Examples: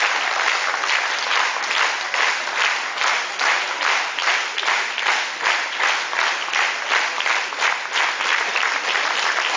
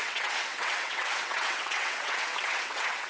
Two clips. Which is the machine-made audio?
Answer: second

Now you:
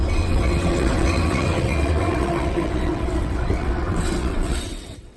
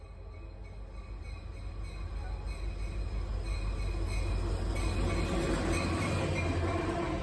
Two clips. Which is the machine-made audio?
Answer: first